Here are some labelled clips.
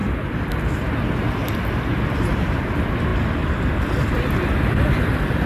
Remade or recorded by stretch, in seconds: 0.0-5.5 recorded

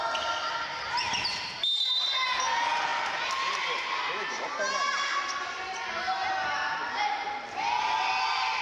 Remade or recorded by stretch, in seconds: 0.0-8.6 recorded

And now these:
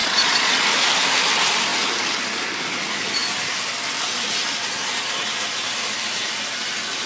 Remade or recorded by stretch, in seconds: 0.0-0.5 remade; 0.5-7.1 recorded

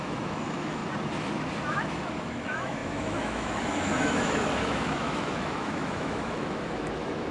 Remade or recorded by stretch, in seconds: 0.0-0.8 remade; 0.8-1.6 recorded; 1.6-7.3 remade

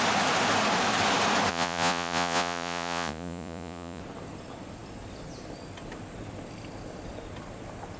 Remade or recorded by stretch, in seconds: 0.0-1.5 recorded; 1.5-4.0 remade; 4.0-8.0 recorded